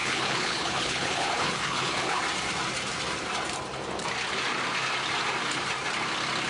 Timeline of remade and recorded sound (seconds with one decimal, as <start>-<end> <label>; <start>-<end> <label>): 0.0-2.2 remade; 2.2-6.5 recorded